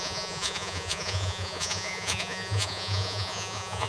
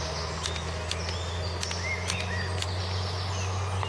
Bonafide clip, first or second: second